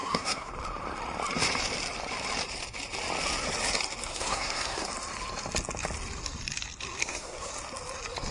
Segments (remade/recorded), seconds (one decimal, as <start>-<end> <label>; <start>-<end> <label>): 0.0-0.5 remade; 0.5-4.1 recorded; 4.1-4.9 remade; 4.9-7.0 recorded; 7.0-7.5 remade; 7.5-8.3 recorded